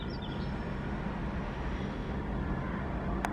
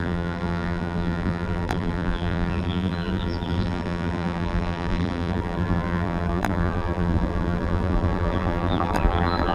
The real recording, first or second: first